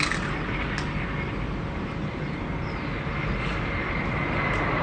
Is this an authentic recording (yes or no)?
yes